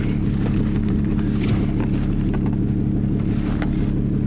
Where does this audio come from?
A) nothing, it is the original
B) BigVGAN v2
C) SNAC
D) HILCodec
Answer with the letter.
A